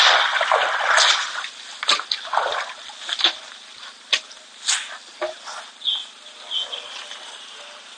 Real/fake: real